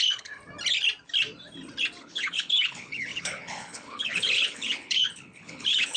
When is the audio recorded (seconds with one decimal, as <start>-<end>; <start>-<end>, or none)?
0.4-2.0